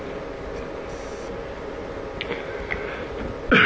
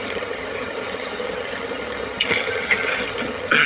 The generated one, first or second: second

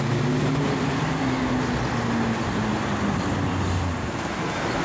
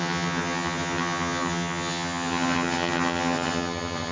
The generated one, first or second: second